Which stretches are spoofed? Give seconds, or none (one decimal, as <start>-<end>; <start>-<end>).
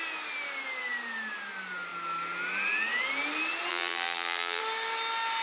3.7-4.6